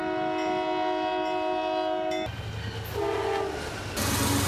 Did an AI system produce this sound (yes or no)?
no